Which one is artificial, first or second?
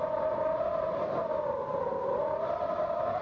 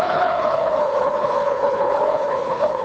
second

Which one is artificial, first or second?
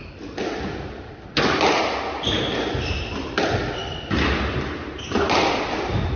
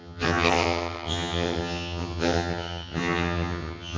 second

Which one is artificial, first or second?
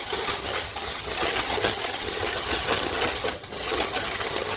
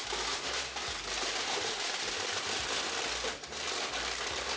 first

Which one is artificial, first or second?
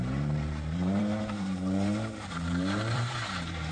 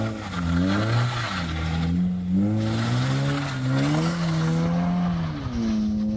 first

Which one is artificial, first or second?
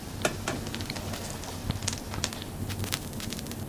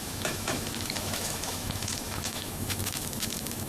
second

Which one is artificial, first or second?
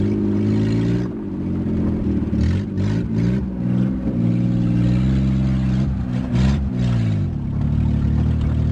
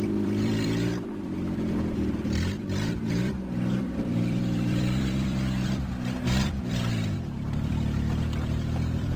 second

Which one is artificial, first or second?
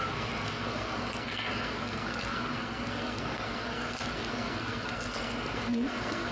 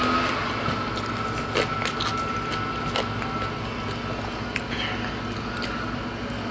first